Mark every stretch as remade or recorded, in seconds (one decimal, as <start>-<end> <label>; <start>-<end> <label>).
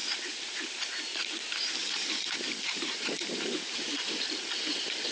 0.0-0.6 remade; 0.6-1.8 recorded; 1.8-5.1 remade